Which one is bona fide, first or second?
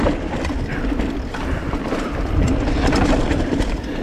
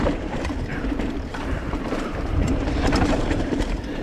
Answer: first